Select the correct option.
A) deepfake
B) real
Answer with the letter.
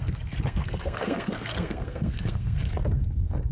A